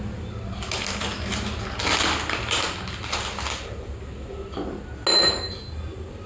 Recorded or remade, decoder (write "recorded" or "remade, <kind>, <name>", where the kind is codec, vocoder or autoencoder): recorded